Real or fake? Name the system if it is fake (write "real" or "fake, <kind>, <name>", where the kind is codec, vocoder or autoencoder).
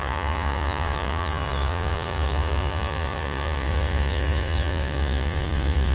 fake, vocoder, Vocos